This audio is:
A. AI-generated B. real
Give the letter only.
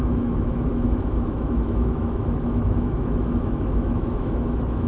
A